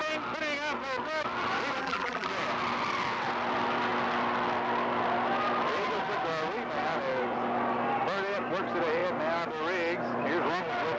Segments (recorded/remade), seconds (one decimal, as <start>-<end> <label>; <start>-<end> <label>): 0.0-1.8 recorded; 1.8-2.3 remade; 2.3-11.0 recorded